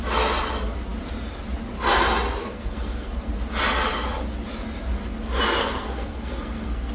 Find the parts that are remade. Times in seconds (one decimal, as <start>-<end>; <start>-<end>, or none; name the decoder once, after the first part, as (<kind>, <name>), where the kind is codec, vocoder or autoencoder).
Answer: 2.4-3.3 (codec, SNAC); 5.6-6.9